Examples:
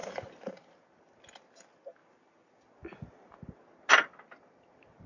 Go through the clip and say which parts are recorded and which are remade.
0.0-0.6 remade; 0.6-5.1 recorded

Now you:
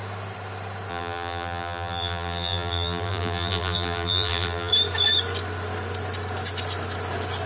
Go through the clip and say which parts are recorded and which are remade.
0.0-0.9 recorded; 0.9-4.7 remade; 4.7-7.5 recorded

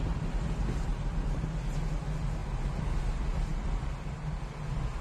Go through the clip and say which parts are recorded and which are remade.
0.0-5.0 recorded